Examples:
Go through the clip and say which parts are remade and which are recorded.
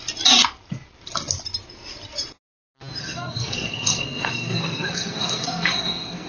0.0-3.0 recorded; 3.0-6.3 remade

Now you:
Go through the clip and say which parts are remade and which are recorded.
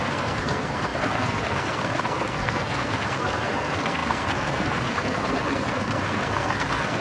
0.0-7.0 remade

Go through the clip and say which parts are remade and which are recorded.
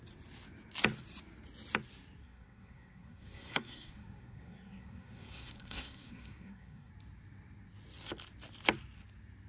0.0-2.2 recorded; 2.2-6.9 remade; 6.9-9.5 recorded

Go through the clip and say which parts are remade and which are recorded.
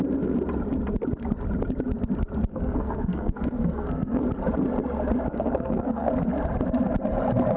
0.0-2.5 recorded; 2.5-4.2 remade; 4.2-5.3 recorded; 5.3-6.1 remade; 6.1-7.6 recorded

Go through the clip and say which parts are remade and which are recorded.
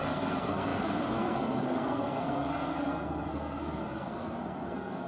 0.0-5.1 remade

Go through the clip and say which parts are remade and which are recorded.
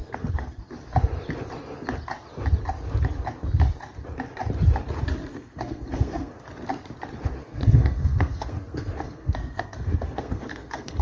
0.0-0.6 remade; 0.6-5.3 recorded; 5.3-6.3 remade; 6.3-7.4 recorded; 7.4-11.0 remade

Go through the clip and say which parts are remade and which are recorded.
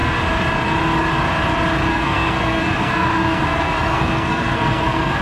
0.0-1.9 recorded; 1.9-5.2 remade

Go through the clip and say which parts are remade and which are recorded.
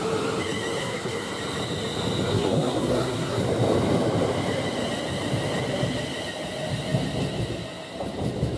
0.0-0.8 recorded; 0.8-1.3 remade; 1.3-2.3 recorded; 2.3-3.4 remade; 3.4-8.6 recorded